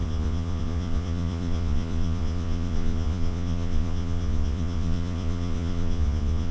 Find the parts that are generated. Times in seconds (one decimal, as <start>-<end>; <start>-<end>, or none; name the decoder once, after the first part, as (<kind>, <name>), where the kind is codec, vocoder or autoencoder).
0.0-6.5 (vocoder, Vocos)